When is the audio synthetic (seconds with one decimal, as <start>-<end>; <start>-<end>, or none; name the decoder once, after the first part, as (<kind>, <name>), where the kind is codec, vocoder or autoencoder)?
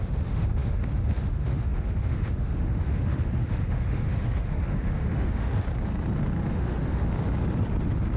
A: 0.0-5.5 (autoencoder, DAC-VAE); 6.5-7.0